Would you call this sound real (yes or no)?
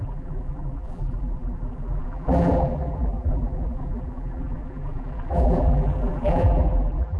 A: no